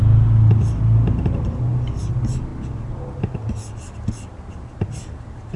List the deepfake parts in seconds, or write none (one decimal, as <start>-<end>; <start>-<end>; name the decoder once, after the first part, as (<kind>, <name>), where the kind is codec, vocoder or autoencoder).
none